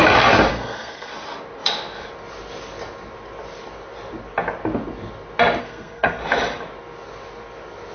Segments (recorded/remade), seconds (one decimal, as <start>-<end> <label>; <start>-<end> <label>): 0.0-0.5 recorded; 0.5-1.1 remade; 1.1-5.6 recorded; 5.6-6.2 remade; 6.2-7.9 recorded